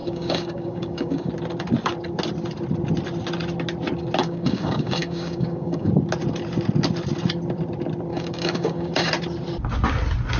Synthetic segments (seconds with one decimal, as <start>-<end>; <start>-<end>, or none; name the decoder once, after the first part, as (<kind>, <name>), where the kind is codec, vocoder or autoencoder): 0.0-1.3 (codec, DAC); 4.2-5.9; 8.1-9.1